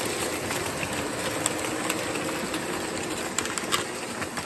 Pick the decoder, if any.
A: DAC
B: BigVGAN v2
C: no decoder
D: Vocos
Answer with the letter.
C